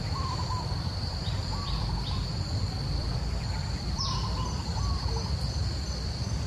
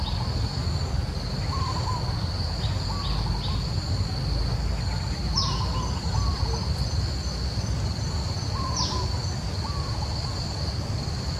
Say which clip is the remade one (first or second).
first